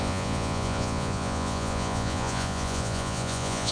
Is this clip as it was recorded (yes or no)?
no